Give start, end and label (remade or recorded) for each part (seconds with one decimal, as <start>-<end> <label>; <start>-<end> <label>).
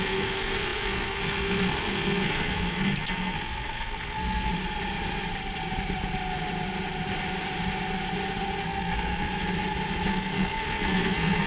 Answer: 0.0-4.5 remade; 4.5-8.6 recorded; 8.6-9.3 remade; 9.3-10.1 recorded; 10.1-11.5 remade